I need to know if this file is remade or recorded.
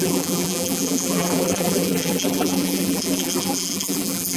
remade